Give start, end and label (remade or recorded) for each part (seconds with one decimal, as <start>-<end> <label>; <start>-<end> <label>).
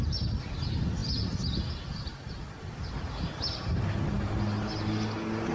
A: 0.0-5.5 recorded